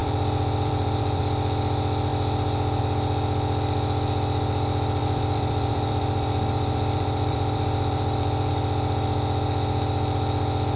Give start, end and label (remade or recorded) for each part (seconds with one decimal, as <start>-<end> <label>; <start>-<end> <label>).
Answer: 0.0-1.2 remade; 1.2-5.0 recorded; 5.0-8.5 remade; 8.5-10.8 recorded